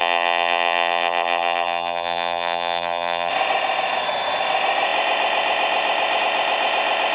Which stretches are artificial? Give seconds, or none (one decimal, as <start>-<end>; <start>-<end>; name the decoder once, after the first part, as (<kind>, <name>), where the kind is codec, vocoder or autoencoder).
0.0-3.3 (vocoder, BigVGAN v2)